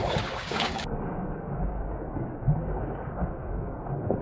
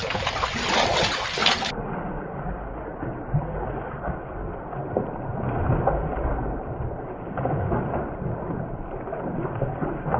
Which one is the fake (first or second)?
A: first